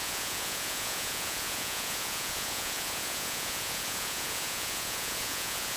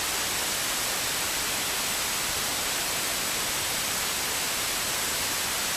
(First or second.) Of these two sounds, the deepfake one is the first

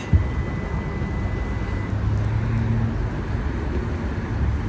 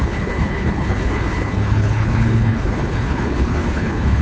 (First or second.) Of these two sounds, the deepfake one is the second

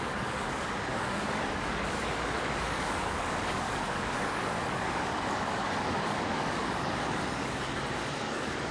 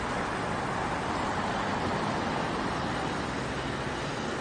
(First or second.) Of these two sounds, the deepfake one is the first